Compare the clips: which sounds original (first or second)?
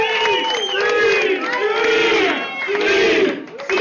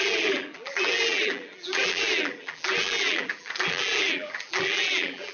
first